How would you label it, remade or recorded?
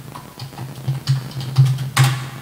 recorded